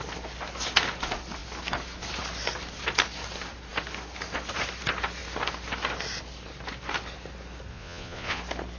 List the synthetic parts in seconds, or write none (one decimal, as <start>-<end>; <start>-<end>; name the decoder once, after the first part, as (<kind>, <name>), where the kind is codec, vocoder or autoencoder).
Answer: 7.7-8.4 (vocoder, Vocos)